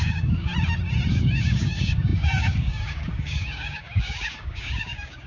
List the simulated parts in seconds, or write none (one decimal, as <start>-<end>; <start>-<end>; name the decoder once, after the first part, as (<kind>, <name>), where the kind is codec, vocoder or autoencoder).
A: 0.0-0.5 (codec, DAC); 1.1-5.3